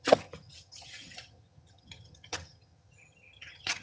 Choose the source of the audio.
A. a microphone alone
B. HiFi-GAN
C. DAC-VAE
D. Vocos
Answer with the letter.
B